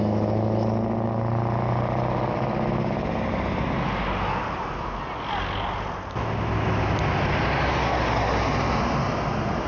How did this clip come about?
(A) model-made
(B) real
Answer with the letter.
B